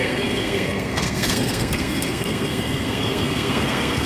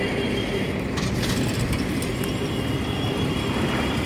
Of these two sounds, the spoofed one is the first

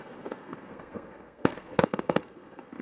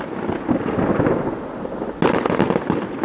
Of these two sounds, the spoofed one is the first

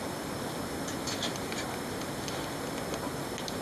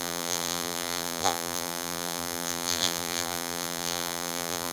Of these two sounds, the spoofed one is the second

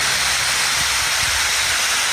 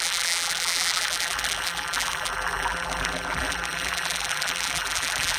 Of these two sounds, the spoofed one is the second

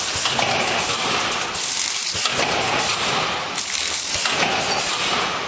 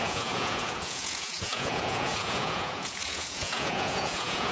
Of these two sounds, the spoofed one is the second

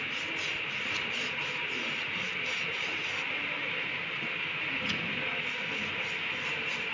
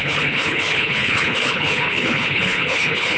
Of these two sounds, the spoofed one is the second